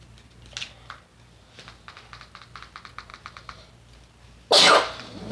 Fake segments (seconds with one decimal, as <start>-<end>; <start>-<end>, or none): none